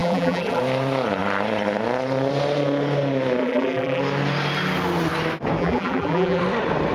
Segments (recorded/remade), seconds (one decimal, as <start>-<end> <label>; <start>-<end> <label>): 0.0-0.6 remade; 0.6-3.4 recorded; 3.4-4.0 remade; 4.0-5.6 recorded; 5.6-6.4 remade; 6.4-6.9 recorded